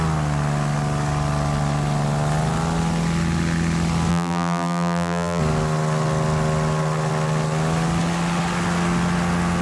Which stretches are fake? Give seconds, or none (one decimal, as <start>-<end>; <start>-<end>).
4.1-5.4